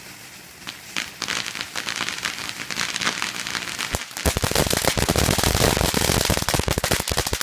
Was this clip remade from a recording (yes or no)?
no